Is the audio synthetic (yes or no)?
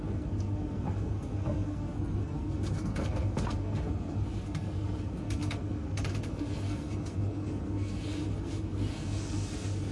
yes